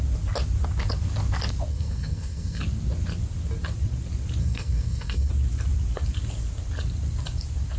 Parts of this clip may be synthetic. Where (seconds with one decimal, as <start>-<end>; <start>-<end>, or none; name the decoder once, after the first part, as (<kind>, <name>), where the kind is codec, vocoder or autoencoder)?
1.7-2.6 (codec, SNAC); 4.4-5.3